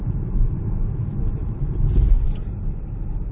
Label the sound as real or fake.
fake